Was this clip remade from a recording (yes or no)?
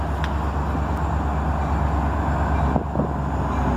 no